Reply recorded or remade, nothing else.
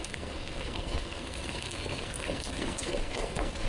remade